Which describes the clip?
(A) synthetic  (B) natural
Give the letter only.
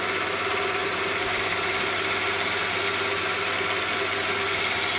B